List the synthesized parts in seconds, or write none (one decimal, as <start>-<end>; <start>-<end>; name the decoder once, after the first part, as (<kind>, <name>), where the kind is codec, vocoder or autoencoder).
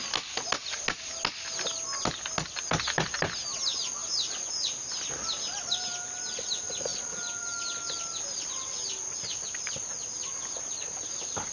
none